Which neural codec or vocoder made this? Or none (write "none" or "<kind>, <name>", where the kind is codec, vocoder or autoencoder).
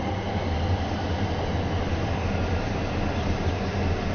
none